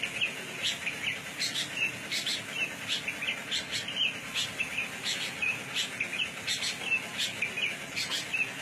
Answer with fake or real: real